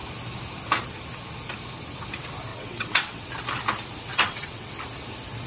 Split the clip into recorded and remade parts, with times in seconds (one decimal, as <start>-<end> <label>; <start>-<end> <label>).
0.0-2.5 recorded; 2.5-3.3 remade; 3.3-4.1 recorded; 4.1-4.7 remade; 4.7-5.5 recorded